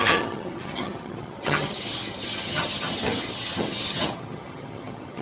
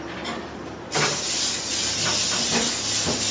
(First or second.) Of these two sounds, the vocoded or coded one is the first